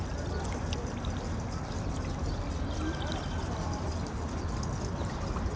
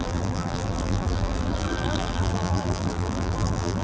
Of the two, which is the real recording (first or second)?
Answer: first